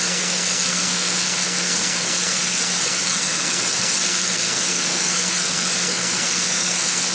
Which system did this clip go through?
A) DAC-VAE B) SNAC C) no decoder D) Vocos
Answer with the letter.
B